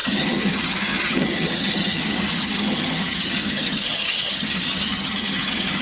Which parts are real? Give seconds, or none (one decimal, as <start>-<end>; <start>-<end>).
none